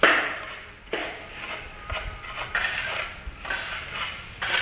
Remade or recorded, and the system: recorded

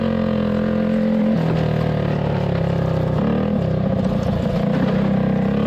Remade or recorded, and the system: recorded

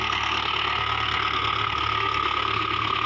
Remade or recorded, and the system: remade, codec, SNAC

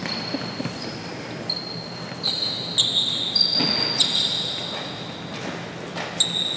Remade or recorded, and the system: recorded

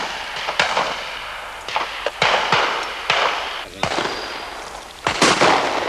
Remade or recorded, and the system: recorded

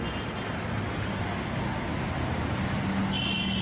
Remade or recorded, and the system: recorded